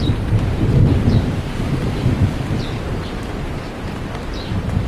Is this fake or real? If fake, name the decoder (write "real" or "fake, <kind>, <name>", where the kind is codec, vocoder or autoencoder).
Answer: fake, vocoder, BigVGAN v2